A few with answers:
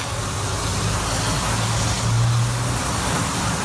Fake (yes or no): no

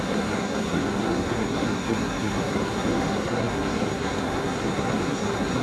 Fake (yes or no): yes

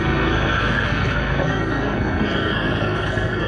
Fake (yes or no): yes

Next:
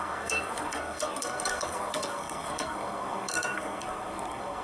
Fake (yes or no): yes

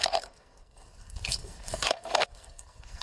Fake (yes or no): yes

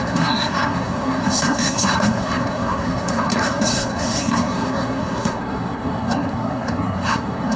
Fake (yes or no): yes